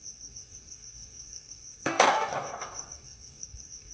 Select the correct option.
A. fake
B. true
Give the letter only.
A